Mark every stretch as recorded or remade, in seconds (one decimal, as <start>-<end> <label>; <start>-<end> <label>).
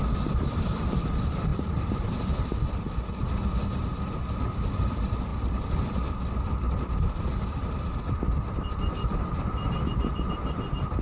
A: 0.0-11.0 remade